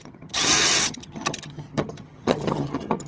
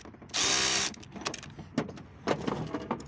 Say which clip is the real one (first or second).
second